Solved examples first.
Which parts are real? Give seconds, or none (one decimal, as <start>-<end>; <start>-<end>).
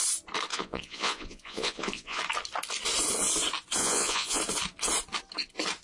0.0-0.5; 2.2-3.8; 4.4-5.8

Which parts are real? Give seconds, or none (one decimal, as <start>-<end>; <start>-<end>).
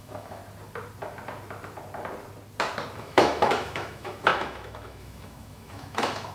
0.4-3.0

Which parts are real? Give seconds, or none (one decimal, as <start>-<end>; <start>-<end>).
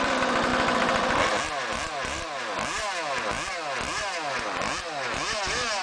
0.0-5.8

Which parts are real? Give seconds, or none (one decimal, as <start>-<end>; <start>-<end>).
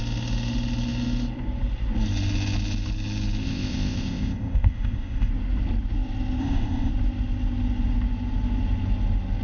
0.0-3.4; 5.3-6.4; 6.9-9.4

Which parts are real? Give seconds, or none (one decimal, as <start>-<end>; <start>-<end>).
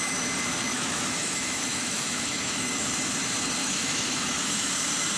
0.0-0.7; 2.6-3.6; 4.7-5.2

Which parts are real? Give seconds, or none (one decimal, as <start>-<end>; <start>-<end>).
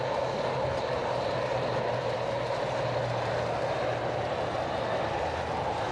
0.0-5.9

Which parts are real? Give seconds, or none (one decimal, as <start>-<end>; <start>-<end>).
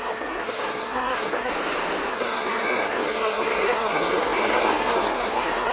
1.5-2.1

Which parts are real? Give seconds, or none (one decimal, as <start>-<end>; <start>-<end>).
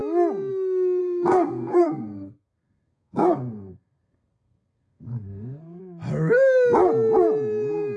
0.0-1.0; 5.8-8.0